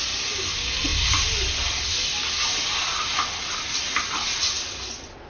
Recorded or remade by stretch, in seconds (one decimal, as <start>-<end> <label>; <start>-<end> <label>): 0.0-5.3 recorded